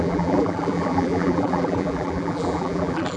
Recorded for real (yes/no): no